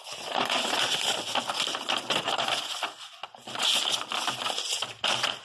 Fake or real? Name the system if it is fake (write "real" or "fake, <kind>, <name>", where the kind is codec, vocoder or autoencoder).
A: real